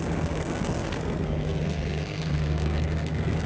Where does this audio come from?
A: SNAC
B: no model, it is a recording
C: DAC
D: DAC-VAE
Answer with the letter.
A